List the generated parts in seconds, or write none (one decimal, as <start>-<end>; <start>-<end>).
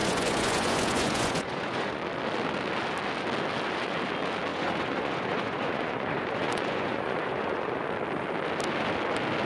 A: 0.0-2.0; 4.5-7.9